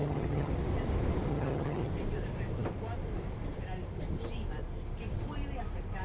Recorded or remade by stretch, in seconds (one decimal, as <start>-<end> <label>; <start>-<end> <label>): 0.0-0.5 remade; 0.5-1.3 recorded; 1.3-1.9 remade; 1.9-6.0 recorded